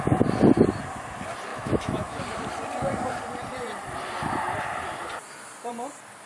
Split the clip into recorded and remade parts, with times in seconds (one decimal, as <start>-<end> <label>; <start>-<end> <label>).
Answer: 0.0-1.5 recorded; 1.5-2.2 remade; 2.2-6.3 recorded